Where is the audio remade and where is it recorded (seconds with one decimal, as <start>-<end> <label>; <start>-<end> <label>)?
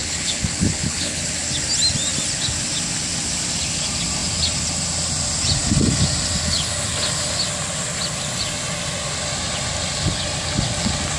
0.0-1.3 remade; 1.3-11.2 recorded